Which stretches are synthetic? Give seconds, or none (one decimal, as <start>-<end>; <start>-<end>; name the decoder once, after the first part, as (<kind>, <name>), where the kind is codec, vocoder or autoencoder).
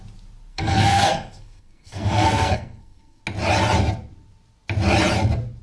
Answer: 0.5-3.2 (codec, SNAC)